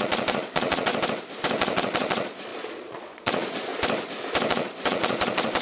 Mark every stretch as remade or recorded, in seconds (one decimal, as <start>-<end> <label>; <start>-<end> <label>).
0.0-0.9 remade; 0.9-1.6 recorded; 1.6-3.7 remade; 3.7-4.5 recorded; 4.5-5.6 remade